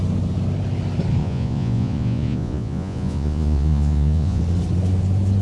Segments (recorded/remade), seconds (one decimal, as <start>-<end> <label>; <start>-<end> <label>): 0.0-1.2 recorded; 1.2-4.4 remade; 4.4-5.4 recorded